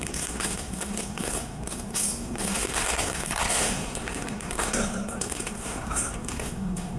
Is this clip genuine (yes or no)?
no